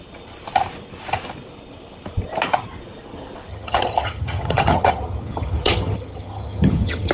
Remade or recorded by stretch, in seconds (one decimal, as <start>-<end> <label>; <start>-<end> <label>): 0.0-3.5 recorded; 3.5-7.1 remade